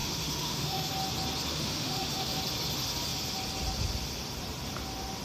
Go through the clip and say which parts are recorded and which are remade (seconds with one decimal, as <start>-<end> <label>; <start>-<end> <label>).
0.0-0.9 remade; 0.9-1.5 recorded; 1.5-2.3 remade; 2.3-5.2 recorded